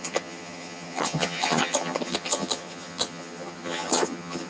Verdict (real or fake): fake